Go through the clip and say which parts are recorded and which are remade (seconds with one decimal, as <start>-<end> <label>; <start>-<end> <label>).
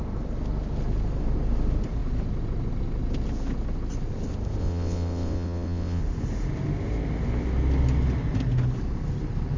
0.0-4.6 recorded; 4.6-6.0 remade; 6.0-9.6 recorded